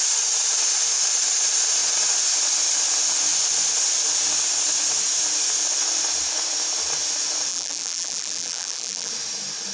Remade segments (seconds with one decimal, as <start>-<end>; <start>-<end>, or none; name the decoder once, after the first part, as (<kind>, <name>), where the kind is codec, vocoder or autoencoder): 7.5-9.1 (vocoder, BigVGAN v2)